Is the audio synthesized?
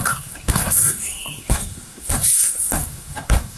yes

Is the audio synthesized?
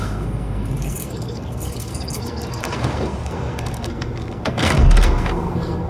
yes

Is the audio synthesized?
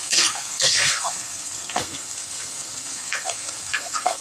yes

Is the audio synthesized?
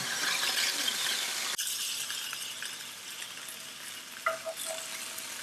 no